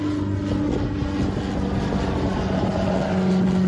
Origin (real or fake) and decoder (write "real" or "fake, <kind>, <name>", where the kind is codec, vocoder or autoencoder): real